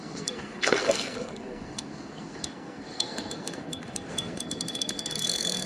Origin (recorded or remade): remade